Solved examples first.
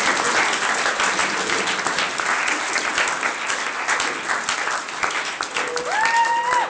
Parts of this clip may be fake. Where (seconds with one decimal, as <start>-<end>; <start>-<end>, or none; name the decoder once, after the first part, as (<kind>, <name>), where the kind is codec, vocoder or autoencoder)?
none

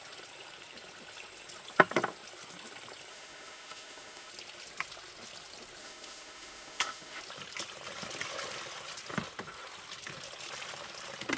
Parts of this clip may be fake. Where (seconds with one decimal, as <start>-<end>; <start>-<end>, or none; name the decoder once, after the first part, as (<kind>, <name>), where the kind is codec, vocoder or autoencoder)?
3.1-4.3 (autoencoder, DAC-VAE); 5.8-7.2

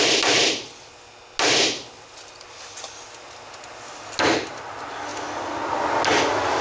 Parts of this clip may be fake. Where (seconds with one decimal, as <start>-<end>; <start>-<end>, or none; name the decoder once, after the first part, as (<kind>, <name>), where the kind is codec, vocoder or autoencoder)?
none

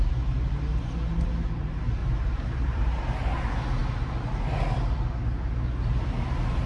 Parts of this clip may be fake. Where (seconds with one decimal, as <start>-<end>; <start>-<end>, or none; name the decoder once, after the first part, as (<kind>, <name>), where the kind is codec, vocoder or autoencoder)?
2.0-3.3 (vocoder, BigVGAN v2)